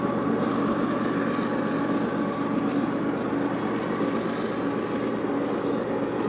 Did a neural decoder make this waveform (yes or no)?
no